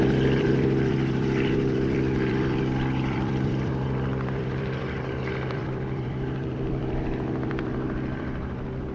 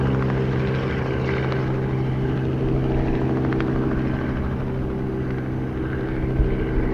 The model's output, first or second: first